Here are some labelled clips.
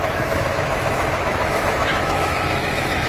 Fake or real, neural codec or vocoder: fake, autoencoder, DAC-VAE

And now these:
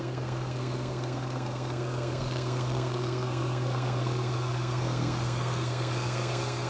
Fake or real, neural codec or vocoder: fake, codec, SNAC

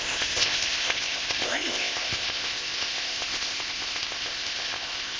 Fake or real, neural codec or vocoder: fake, codec, ZipCodec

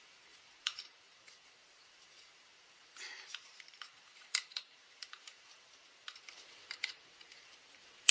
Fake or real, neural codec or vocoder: fake, vocoder, BigVGAN v2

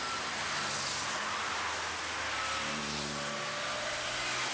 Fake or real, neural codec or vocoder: real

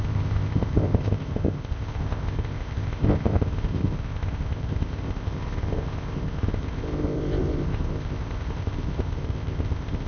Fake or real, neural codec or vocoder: fake, codec, ZipCodec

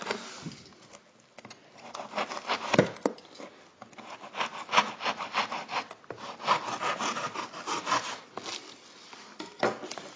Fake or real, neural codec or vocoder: real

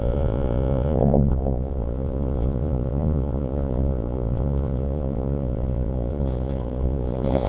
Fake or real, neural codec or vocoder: fake, vocoder, Vocos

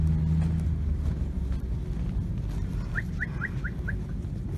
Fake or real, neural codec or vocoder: real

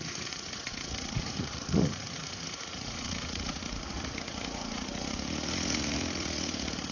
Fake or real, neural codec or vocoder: fake, vocoder, Vocos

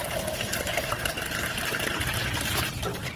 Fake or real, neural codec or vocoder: fake, vocoder, BigVGAN v2